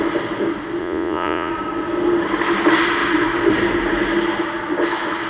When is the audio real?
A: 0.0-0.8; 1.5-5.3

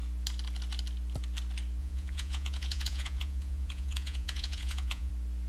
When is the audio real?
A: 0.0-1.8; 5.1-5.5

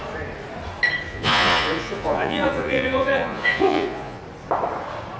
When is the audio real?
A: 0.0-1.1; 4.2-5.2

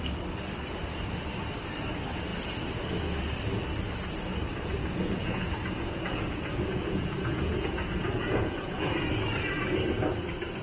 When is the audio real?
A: 0.0-4.8; 8.8-10.6

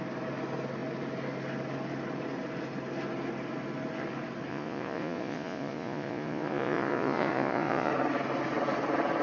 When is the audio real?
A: 0.0-4.5; 7.9-9.2

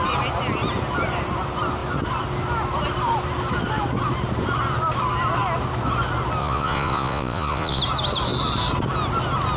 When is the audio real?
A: 0.0-6.4; 7.8-9.6

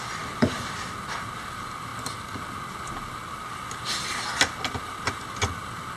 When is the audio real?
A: 0.0-6.0

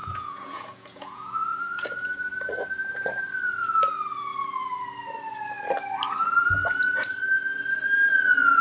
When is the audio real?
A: 2.1-8.6